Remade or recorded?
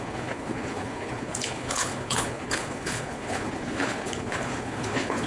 remade